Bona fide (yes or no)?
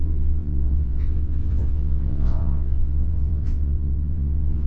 no